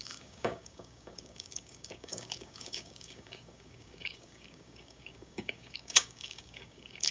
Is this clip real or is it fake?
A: fake